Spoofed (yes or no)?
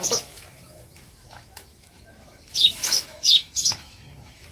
yes